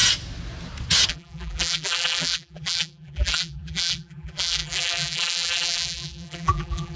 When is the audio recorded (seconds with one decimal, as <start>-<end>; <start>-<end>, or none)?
0.0-1.1